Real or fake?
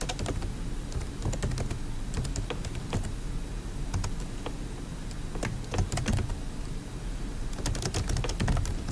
real